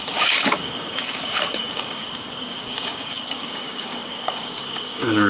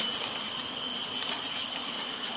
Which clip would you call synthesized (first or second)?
first